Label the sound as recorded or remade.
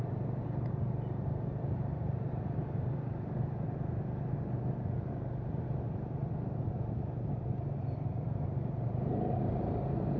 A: remade